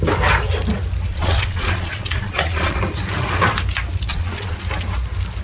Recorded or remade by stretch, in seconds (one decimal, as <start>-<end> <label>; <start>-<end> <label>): 0.0-1.1 recorded; 1.1-2.8 remade; 2.8-4.1 recorded; 4.1-4.6 remade; 4.6-5.4 recorded